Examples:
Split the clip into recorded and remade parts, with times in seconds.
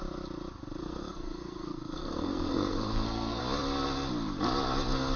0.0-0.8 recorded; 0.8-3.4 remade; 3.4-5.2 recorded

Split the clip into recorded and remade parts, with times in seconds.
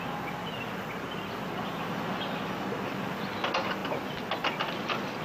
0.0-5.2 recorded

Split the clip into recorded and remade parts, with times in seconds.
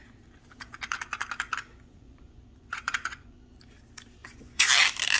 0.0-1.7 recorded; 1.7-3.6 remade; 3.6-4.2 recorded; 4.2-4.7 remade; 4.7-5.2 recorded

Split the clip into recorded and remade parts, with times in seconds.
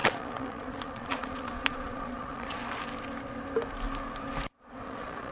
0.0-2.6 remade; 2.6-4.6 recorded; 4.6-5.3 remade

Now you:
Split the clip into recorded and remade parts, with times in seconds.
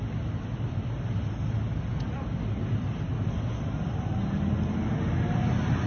0.0-5.9 recorded